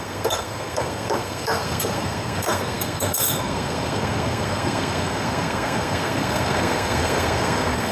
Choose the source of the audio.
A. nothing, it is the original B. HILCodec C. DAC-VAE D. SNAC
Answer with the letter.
D